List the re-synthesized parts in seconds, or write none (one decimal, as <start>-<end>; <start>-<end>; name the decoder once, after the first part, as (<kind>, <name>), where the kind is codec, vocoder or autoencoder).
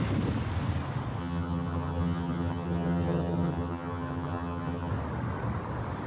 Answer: 1.2-4.9 (vocoder, HiFi-GAN)